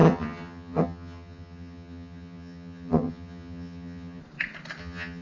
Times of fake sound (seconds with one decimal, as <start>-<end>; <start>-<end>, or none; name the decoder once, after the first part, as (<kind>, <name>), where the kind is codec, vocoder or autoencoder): 0.0-4.2 (vocoder, HiFi-GAN); 4.8-5.2